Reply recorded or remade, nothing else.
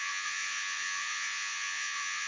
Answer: remade